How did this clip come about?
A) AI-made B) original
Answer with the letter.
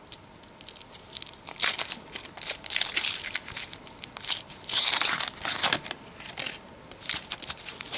B